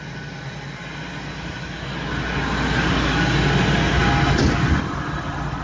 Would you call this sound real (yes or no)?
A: yes